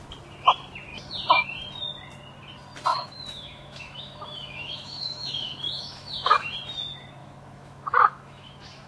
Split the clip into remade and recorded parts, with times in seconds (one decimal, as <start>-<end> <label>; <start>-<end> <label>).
0.0-2.9 recorded; 2.9-6.5 remade; 6.5-7.2 recorded; 7.2-8.9 remade